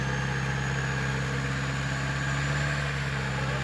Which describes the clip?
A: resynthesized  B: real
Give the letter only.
B